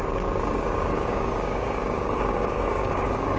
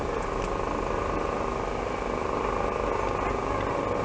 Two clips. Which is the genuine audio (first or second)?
second